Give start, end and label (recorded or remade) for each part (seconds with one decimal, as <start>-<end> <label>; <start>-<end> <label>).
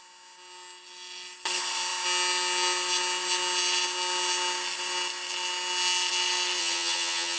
0.0-6.6 recorded; 6.6-7.4 remade